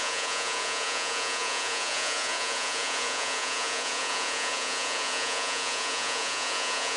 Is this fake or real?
fake